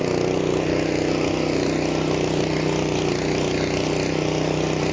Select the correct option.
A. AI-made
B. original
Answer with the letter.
B